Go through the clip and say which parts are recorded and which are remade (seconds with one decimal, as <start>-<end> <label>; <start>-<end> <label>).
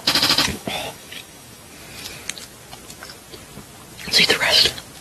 0.0-0.5 recorded; 0.5-1.7 remade; 1.7-5.0 recorded